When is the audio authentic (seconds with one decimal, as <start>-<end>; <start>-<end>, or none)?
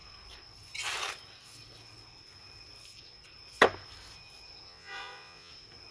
0.0-4.7; 5.5-5.9